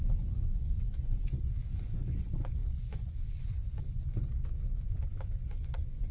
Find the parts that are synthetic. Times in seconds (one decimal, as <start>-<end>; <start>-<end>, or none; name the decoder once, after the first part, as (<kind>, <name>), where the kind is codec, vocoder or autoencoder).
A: 0.0-6.1 (vocoder, Vocos)